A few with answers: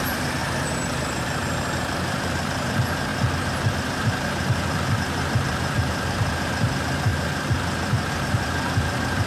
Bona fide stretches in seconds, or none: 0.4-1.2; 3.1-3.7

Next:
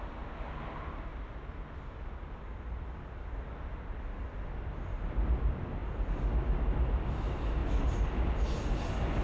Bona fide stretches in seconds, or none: 0.0-9.2